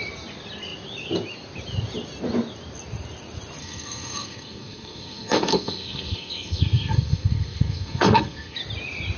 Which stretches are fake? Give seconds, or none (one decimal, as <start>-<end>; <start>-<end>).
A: 3.6-8.6